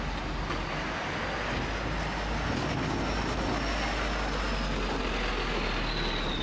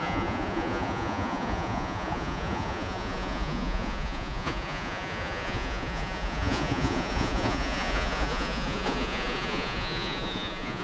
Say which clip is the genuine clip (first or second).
first